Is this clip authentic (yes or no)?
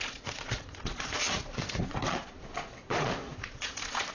no